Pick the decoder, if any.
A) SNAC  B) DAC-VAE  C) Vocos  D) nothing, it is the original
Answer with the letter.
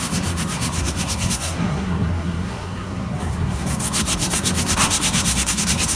A